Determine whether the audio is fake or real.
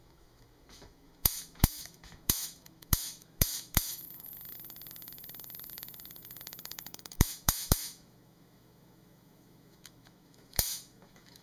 fake